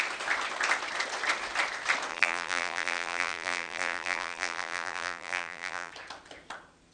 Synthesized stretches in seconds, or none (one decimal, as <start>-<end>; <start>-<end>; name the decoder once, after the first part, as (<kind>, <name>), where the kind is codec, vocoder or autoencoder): 2.1-5.9 (vocoder, BigVGAN v2)